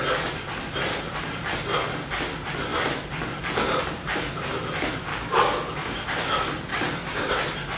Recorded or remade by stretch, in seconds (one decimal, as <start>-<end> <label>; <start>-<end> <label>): 0.0-5.1 recorded; 5.1-6.3 remade; 6.3-6.7 recorded; 6.7-7.3 remade; 7.3-7.8 recorded